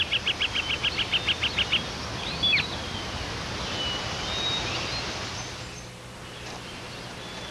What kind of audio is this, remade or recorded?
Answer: recorded